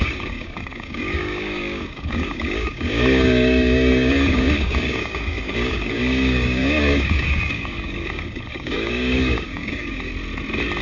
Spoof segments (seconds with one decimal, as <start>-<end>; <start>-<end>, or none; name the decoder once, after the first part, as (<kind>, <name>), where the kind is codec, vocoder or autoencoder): 0.0-10.1 (codec, DAC)